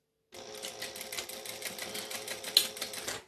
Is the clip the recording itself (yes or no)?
yes